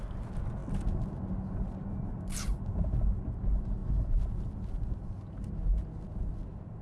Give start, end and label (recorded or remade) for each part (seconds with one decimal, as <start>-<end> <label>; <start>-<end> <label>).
0.0-6.8 recorded